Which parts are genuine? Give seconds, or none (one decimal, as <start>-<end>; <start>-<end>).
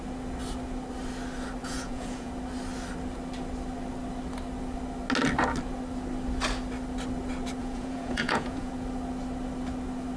0.0-1.6; 2.3-7.6; 8.7-10.2